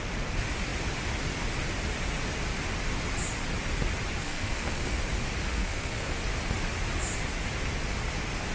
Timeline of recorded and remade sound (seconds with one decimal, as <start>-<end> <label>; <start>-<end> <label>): 0.0-4.2 recorded; 4.2-5.0 remade; 5.0-5.5 recorded; 5.5-6.2 remade; 6.2-8.5 recorded

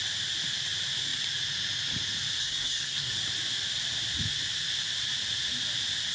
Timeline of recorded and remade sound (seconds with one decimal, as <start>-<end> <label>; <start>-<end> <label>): 0.0-2.4 recorded; 2.4-3.1 remade; 3.1-6.1 recorded